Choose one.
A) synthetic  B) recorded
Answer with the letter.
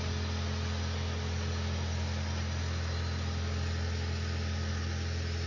B